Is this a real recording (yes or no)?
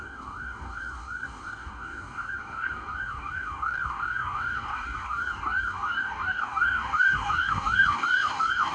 no